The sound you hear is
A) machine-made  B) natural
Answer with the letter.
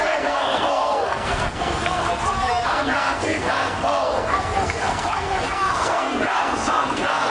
A